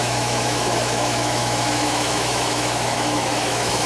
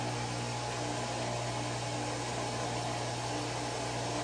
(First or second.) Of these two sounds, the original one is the second